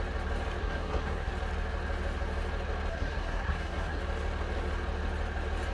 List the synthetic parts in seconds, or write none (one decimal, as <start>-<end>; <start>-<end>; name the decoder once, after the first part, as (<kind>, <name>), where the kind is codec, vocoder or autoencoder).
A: 0.6-1.3 (codec, SNAC); 2.9-4.0